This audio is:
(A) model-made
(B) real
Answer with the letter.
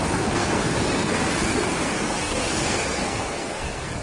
A